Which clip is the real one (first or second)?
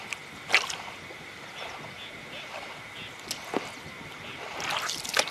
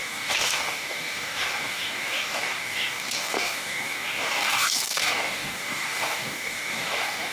first